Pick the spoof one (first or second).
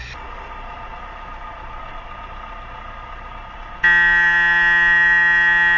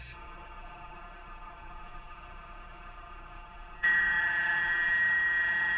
second